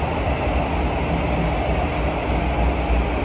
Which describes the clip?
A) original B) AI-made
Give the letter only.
A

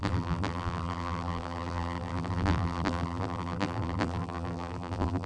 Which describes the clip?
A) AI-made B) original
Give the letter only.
A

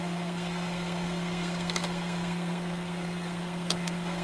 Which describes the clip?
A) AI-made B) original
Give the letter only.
A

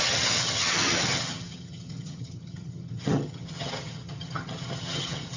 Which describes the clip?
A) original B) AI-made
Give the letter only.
B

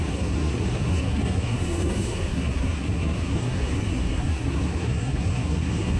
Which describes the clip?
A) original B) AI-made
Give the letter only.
B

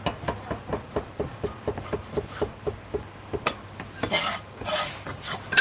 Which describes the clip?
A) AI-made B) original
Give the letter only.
B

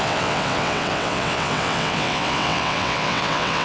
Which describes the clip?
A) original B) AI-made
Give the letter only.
B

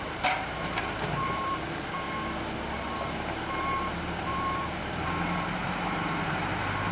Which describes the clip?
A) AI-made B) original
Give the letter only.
A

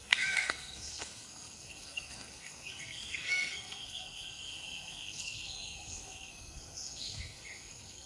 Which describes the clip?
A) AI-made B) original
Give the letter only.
A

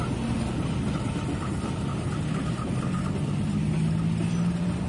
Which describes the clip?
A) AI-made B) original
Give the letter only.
B